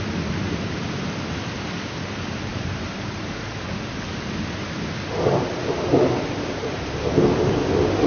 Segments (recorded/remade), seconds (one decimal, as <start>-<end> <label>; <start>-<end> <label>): 0.0-2.5 recorded; 2.5-3.7 remade; 3.7-5.6 recorded; 5.6-7.3 remade; 7.3-8.1 recorded